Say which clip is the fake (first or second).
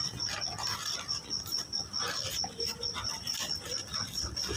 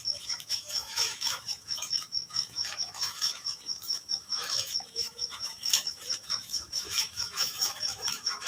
second